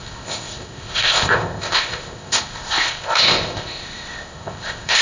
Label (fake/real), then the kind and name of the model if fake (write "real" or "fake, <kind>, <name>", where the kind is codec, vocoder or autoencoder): fake, codec, ZipCodec